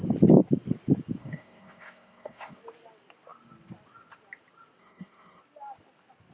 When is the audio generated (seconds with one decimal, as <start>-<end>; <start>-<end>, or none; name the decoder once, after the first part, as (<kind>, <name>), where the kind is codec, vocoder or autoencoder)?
1.2-2.6 (codec, SNAC); 4.8-5.4